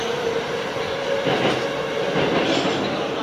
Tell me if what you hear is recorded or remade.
recorded